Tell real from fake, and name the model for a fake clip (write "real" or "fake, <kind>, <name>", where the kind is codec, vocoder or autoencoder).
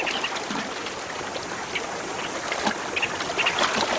real